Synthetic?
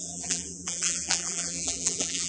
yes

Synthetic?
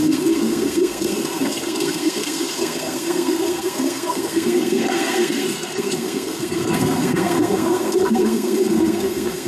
yes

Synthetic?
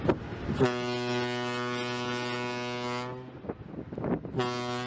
no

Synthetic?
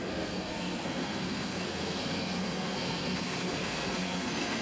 yes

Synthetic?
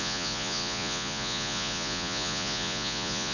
yes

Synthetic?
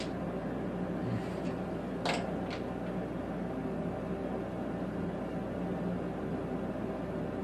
no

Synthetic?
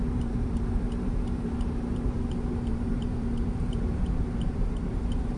yes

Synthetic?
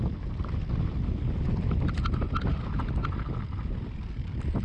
no